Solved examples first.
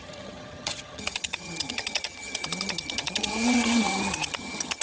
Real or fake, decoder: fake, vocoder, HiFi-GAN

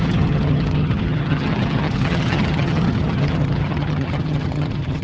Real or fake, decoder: fake, vocoder, HiFi-GAN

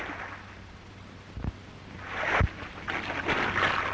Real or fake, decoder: real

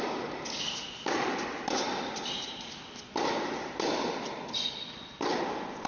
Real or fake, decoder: real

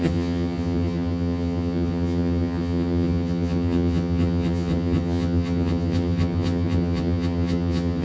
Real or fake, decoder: fake, vocoder, HiFi-GAN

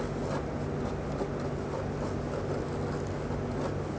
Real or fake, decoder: real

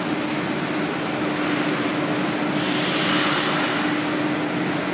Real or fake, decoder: real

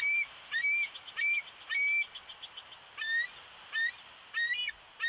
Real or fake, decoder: real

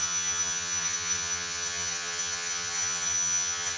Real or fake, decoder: fake, vocoder, HiFi-GAN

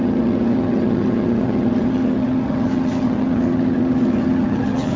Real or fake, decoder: fake, vocoder, HiFi-GAN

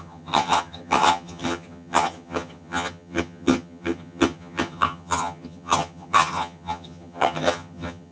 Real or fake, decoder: fake, vocoder, HiFi-GAN